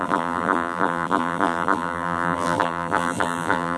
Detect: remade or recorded remade